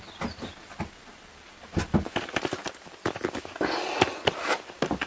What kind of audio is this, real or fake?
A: real